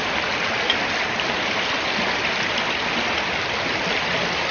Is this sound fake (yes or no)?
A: no